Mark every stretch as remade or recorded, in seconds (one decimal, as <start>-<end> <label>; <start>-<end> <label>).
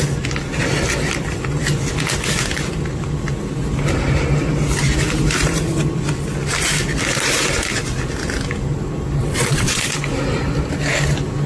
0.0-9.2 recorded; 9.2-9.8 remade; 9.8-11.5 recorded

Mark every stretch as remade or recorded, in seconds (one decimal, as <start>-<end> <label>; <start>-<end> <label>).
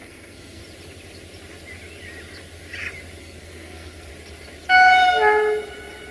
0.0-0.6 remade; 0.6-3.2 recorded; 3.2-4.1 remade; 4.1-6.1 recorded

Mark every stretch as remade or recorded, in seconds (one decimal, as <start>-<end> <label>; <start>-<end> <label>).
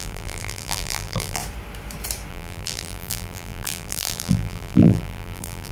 0.0-1.4 remade; 1.4-2.3 recorded; 2.3-5.7 remade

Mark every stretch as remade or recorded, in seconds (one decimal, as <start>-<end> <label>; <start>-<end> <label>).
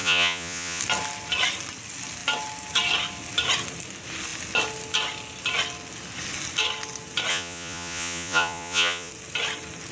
0.0-0.8 remade; 0.8-7.3 recorded; 7.3-9.1 remade; 9.1-9.9 recorded